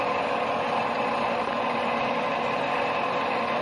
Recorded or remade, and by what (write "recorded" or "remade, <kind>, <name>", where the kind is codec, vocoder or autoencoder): recorded